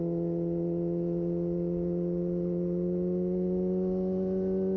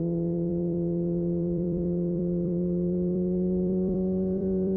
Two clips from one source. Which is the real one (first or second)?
first